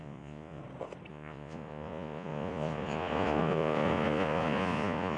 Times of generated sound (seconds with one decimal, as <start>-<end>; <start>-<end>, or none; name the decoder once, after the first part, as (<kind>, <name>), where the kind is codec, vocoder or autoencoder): 0.0-0.6 (vocoder, Vocos); 1.1-5.2